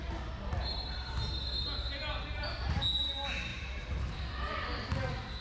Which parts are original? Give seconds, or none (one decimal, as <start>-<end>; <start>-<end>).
0.0-3.5; 4.0-5.4